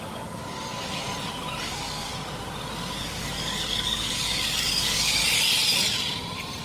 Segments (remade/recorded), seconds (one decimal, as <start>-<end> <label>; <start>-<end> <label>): 0.0-0.4 remade; 0.4-1.6 recorded; 1.6-2.1 remade; 2.1-3.0 recorded; 3.0-5.2 remade; 5.2-6.6 recorded